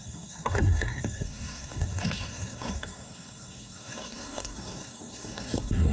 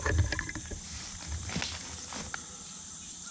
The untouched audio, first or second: second